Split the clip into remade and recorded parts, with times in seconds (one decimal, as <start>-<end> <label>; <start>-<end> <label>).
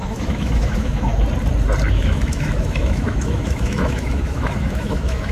0.0-1.1 remade; 1.1-1.9 recorded; 1.9-5.3 remade